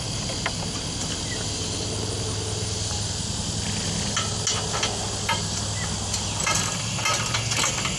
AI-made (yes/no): no